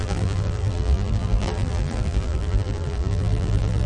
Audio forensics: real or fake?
fake